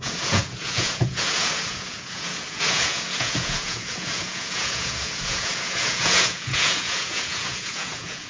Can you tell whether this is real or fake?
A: fake